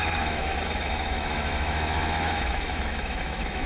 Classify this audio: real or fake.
fake